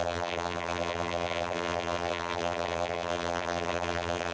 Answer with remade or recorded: remade